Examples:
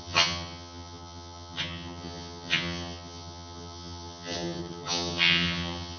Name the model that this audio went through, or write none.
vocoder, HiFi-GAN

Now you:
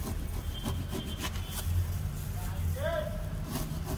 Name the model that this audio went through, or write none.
none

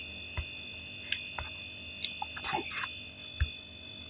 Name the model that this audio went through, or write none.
none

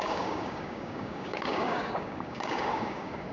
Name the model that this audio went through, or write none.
codec, DAC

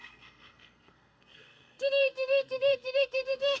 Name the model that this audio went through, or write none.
codec, SNAC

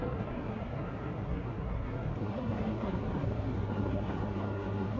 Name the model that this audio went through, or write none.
codec, SNAC